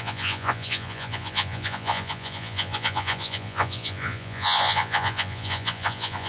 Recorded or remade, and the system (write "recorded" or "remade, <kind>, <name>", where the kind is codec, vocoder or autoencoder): remade, vocoder, Vocos